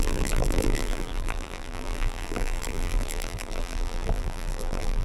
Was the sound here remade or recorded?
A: remade